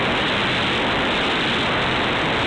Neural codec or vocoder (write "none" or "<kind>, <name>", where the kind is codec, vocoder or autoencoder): none